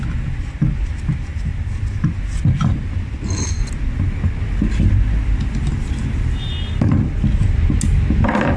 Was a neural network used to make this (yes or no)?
no